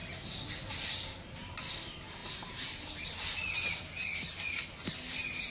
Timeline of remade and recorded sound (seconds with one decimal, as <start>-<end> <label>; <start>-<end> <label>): 0.0-0.7 recorded; 0.7-2.2 remade; 2.2-5.5 recorded